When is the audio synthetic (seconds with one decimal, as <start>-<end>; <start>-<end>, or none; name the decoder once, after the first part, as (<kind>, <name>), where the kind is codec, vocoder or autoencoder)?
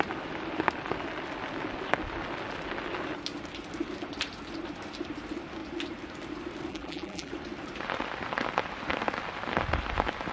6.7-7.3 (vocoder, BigVGAN v2)